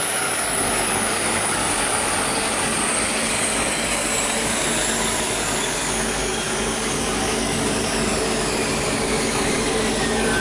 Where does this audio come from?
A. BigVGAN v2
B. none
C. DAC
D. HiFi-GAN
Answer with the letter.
C